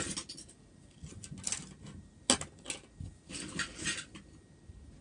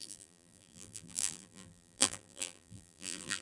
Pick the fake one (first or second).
second